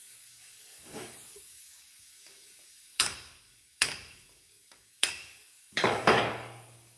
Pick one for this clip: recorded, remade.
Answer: remade